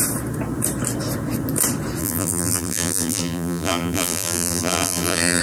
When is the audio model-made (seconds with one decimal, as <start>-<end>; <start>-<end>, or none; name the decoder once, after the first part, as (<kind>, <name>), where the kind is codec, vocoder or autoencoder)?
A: 2.0-5.4 (vocoder, BigVGAN v2)